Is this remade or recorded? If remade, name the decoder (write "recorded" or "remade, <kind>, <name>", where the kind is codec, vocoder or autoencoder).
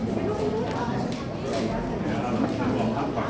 recorded